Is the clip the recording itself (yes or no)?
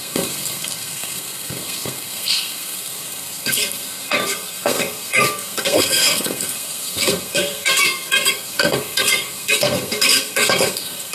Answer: no